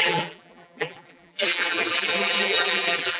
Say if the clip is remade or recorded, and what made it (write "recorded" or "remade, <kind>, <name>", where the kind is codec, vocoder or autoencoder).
remade, vocoder, BigVGAN v2